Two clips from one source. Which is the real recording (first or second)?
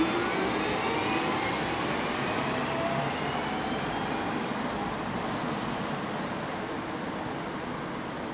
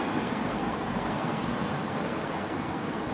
first